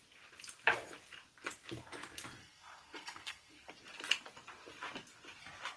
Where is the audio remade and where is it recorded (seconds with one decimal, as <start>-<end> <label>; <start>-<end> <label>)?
0.0-2.4 recorded; 2.4-3.7 remade; 3.7-5.8 recorded